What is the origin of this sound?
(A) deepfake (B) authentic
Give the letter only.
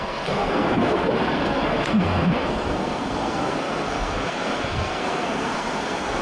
A